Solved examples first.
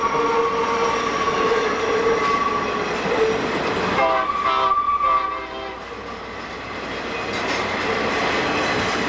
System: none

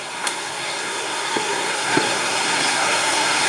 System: codec, SNAC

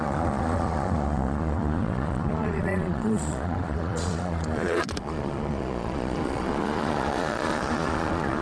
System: vocoder, Vocos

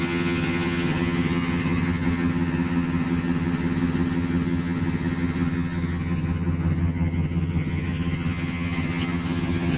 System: vocoder, HiFi-GAN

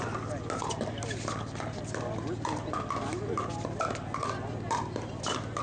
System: none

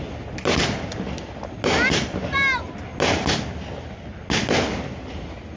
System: none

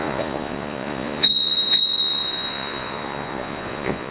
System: vocoder, Vocos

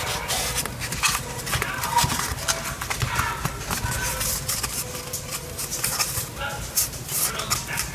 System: none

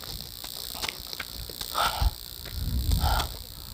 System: none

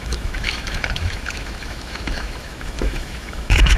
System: autoencoder, DAC-VAE